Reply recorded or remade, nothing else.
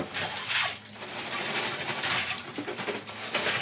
recorded